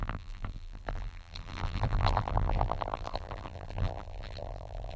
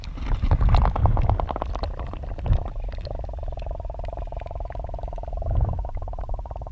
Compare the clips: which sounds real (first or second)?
second